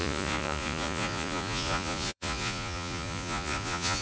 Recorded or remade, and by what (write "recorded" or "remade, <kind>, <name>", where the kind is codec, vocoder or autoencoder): remade, vocoder, Vocos